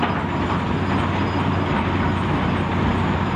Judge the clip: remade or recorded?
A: recorded